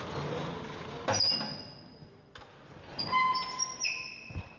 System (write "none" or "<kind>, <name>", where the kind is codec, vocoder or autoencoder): none